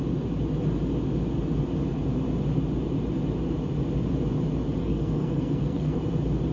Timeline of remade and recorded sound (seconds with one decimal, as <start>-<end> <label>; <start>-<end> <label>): 0.0-4.8 recorded; 4.8-6.0 remade; 6.0-6.5 recorded